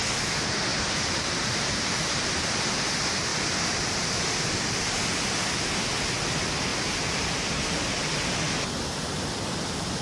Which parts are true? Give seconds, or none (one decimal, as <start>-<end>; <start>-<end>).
0.0-0.7; 2.9-6.7; 7.5-10.0